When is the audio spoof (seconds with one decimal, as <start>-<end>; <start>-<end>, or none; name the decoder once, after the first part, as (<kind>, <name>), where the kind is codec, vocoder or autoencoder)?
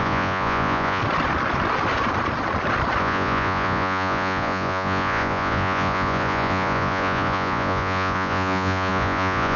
0.0-1.0 (vocoder, Vocos); 3.0-9.6